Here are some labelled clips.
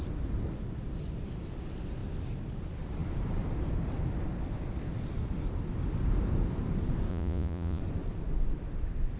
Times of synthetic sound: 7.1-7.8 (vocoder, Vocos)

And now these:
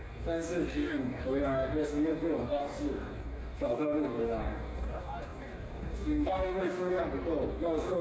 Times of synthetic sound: 0.0-7.0 (codec, DAC); 7.5-8.0

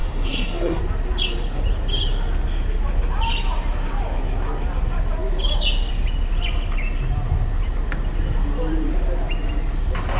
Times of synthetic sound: 0.0-0.8 (codec, SNAC)

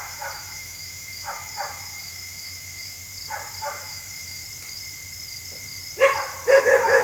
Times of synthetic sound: 0.0-3.0 (autoencoder, DAC-VAE); 3.6-4.4; 6.6-7.0

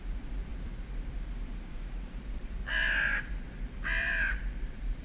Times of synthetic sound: 0.0-2.6 (vocoder, BigVGAN v2); 3.3-5.0

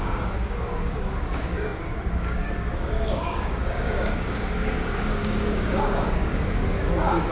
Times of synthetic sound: 0.0-7.3 (codec, DAC)

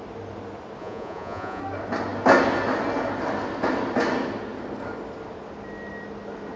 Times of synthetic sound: 0.8-1.6 (vocoder, Vocos)

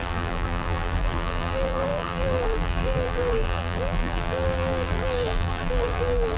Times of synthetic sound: 0.0-6.4 (vocoder, BigVGAN v2)